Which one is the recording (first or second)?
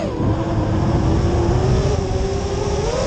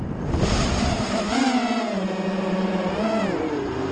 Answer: first